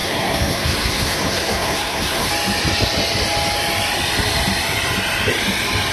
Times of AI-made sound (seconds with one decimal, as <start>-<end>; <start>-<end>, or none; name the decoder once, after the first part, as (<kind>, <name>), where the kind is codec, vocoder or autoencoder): 0.0-2.3 (codec, SNAC)